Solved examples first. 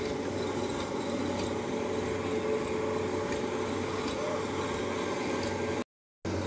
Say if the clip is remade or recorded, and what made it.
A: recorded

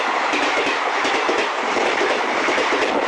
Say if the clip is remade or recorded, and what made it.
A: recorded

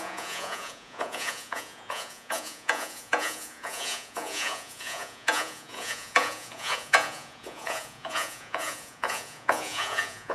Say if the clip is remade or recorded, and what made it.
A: remade, vocoder, Vocos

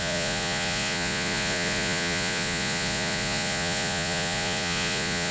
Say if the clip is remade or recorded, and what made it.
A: remade, vocoder, Vocos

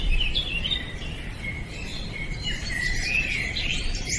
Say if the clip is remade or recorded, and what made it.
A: recorded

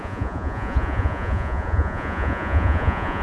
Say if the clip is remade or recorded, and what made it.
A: remade, vocoder, Vocos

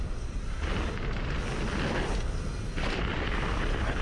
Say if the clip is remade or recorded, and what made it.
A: recorded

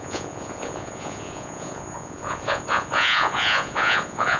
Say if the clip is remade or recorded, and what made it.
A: remade, vocoder, Vocos